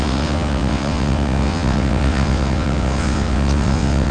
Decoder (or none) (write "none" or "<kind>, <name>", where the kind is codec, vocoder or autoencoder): vocoder, WaveNeXt